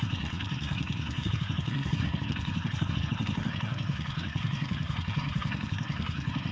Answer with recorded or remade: remade